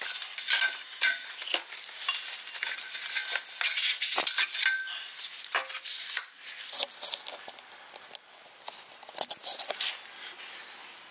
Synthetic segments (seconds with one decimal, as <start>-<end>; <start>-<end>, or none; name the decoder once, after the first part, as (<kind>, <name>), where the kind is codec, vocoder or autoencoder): none